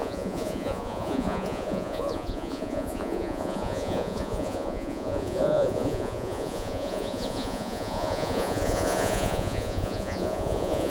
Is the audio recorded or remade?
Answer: remade